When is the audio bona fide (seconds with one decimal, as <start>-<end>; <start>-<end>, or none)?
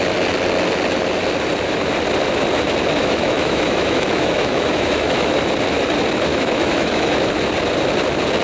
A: 0.0-3.0; 5.3-6.3; 7.2-8.4